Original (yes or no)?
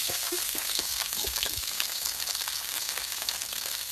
no